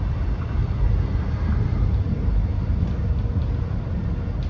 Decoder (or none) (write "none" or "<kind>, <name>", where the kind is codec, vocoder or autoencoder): none